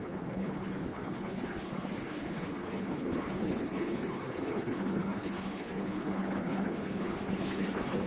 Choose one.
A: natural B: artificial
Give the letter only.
B